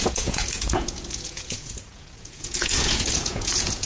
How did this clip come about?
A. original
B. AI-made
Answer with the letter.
B